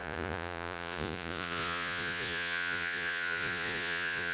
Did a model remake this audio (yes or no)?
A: yes